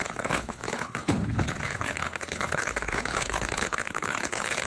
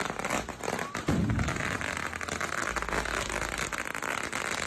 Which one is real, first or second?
second